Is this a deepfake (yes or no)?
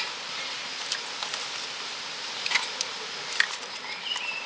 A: no